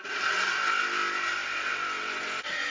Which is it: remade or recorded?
recorded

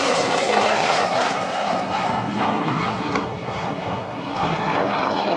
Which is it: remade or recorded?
remade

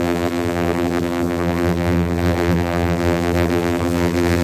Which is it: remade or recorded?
remade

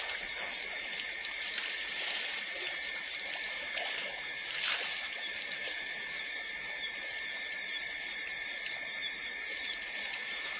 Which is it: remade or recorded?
remade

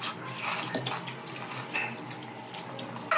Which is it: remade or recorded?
recorded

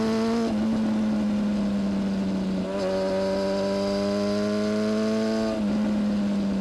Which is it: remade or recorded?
recorded